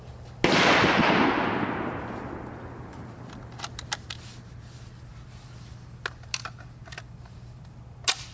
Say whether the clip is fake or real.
real